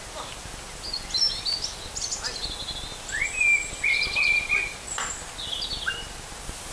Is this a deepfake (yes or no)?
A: no